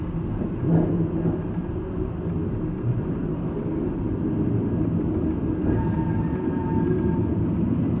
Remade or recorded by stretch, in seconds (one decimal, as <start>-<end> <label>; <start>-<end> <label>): 0.0-8.0 recorded